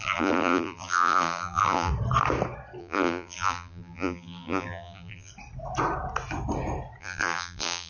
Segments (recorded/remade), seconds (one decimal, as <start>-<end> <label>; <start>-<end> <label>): 0.0-1.9 remade; 1.9-2.8 recorded; 2.8-5.3 remade; 5.3-7.0 recorded; 7.0-7.9 remade